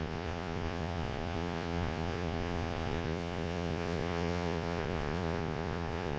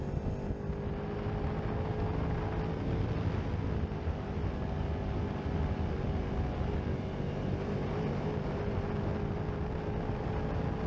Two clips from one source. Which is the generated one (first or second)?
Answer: first